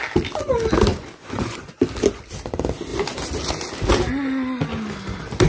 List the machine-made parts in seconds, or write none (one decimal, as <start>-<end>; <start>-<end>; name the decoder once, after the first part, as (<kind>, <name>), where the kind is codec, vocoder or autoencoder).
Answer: 0.9-1.7 (vocoder, Vocos)